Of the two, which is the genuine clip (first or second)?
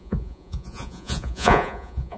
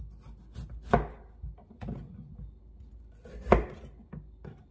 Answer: second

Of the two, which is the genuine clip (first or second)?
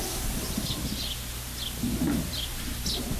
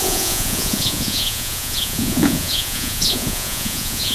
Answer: first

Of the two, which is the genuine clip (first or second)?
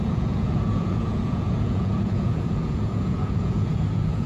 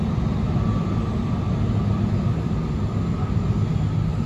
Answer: second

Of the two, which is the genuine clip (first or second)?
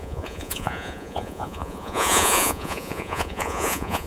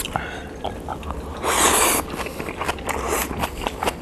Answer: second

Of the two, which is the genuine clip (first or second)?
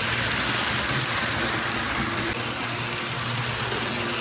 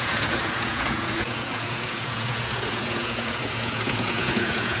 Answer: first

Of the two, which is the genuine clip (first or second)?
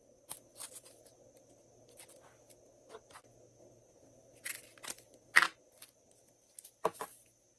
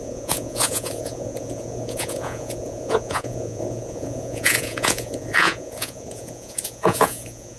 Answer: first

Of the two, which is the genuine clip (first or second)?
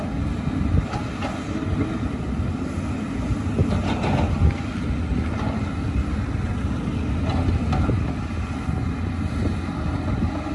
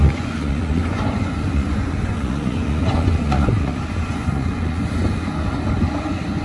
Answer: first